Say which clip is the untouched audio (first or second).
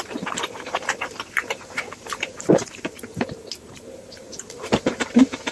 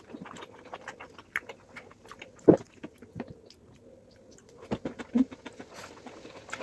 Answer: second